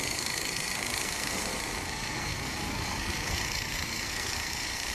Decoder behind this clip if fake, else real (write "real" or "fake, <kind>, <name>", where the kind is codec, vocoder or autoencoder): fake, codec, SNAC